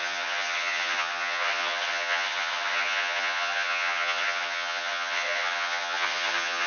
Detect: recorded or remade remade